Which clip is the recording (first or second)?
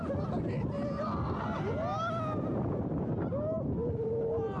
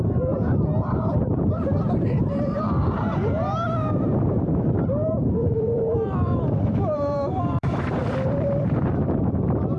first